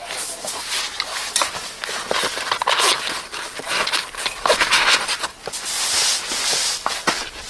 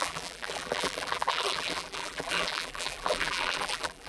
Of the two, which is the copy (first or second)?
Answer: second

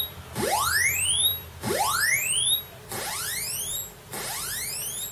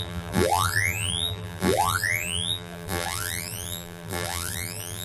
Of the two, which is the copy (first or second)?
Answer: second